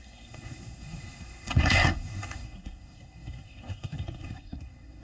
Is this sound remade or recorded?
remade